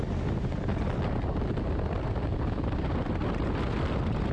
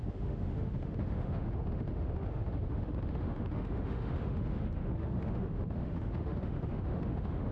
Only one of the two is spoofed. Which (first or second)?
second